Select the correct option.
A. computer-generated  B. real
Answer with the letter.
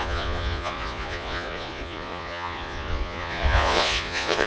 A